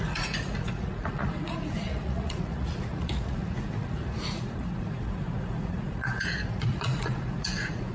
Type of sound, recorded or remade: remade